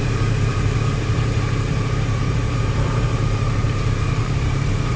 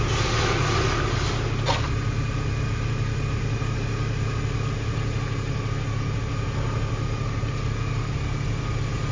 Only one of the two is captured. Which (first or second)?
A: second